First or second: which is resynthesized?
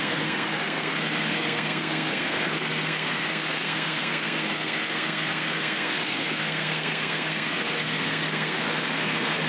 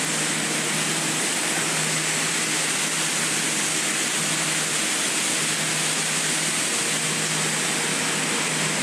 first